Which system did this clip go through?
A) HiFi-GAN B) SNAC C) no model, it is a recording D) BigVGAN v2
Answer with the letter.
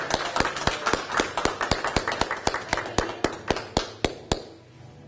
C